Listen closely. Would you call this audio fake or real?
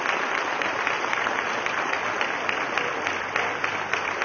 real